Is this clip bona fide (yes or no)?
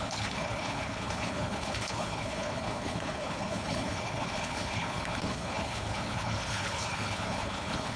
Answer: no